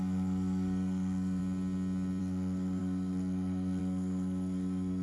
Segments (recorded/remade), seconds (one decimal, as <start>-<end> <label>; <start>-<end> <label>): 0.0-1.4 remade; 1.4-2.2 recorded; 2.2-5.0 remade